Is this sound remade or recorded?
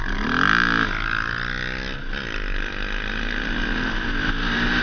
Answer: recorded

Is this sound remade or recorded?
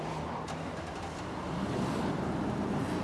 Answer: recorded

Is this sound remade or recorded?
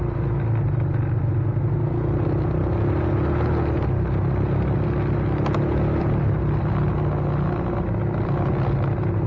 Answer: recorded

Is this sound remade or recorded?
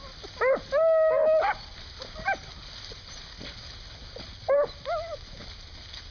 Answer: recorded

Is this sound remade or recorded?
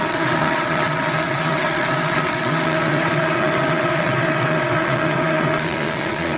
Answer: remade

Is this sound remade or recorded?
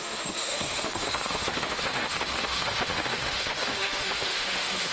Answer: remade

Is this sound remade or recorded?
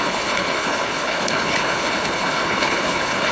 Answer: remade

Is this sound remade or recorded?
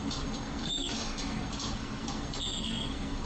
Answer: remade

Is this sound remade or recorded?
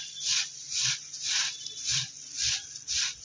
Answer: recorded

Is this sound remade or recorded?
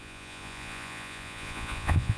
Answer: remade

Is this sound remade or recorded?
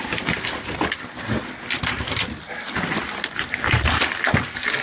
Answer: recorded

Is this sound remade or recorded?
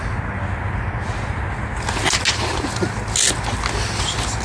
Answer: recorded